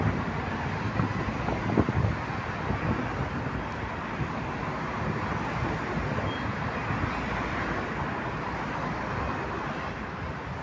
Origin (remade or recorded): recorded